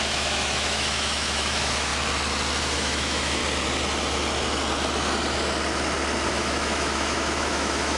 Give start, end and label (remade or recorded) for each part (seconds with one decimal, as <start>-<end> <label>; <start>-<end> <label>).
0.0-1.9 remade; 1.9-2.6 recorded; 2.6-3.4 remade; 3.4-6.3 recorded; 6.3-8.0 remade